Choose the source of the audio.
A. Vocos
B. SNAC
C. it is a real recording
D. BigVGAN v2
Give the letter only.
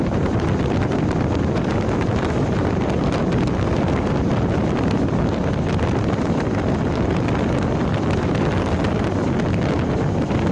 C